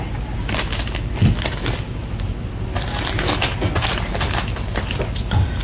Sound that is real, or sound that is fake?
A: real